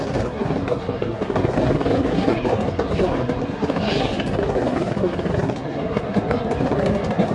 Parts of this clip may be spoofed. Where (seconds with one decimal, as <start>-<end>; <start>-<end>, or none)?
0.0-7.3